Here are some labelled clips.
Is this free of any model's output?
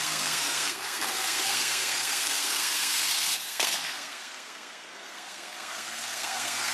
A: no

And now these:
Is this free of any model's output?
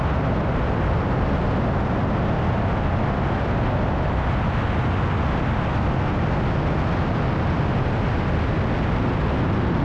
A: yes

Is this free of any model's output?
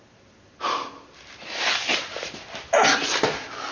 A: yes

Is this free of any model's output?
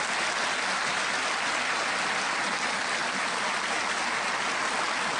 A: yes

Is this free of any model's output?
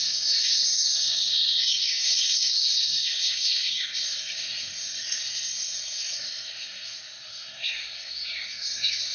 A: no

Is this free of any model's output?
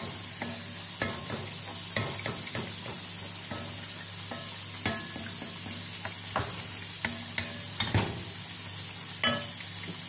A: yes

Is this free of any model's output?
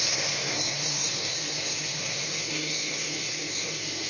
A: no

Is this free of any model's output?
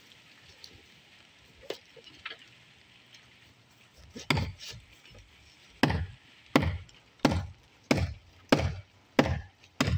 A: yes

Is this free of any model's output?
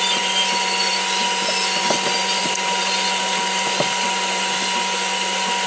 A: yes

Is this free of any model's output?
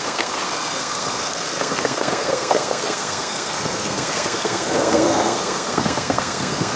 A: no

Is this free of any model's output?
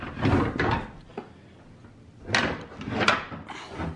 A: yes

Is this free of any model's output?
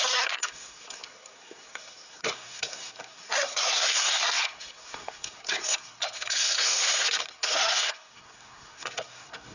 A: no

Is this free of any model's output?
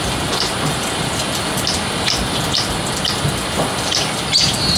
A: yes